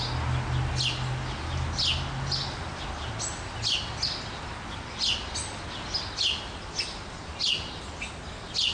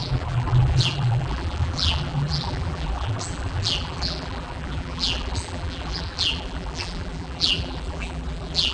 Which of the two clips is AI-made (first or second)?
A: second